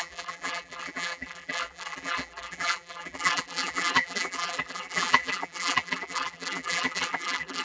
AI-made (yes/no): yes